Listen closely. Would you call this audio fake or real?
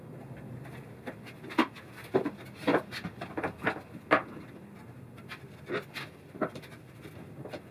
real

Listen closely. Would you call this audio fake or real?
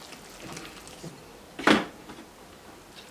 real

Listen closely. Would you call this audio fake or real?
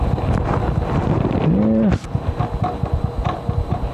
real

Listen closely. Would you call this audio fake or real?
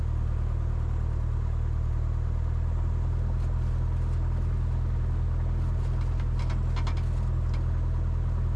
real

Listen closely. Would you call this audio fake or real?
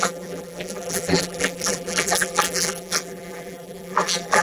fake